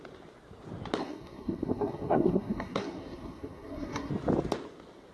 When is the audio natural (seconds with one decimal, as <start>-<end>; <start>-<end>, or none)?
0.0-1.0; 4.1-5.1